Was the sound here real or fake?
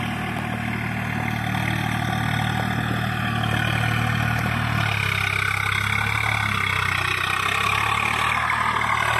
real